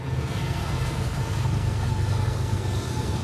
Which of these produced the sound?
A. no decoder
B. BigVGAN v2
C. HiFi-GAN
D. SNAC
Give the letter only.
D